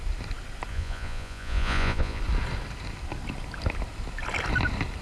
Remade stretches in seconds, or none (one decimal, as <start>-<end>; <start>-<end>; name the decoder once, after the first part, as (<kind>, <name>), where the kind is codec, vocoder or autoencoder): 0.7-2.2 (vocoder, Vocos)